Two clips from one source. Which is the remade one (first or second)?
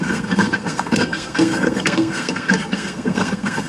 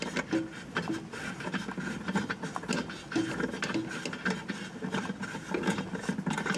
first